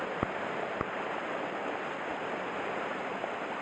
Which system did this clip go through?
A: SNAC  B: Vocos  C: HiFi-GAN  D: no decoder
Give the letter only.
D